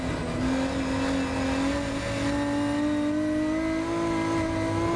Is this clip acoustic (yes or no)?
yes